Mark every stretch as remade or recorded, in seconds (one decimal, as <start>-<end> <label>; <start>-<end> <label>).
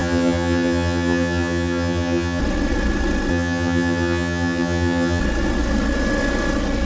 0.0-2.4 remade; 2.4-3.3 recorded; 3.3-5.2 remade; 5.2-6.8 recorded